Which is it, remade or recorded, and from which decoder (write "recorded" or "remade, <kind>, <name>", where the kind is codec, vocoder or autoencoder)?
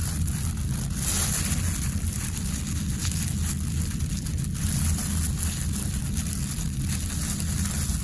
recorded